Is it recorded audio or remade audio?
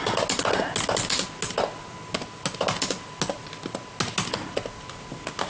recorded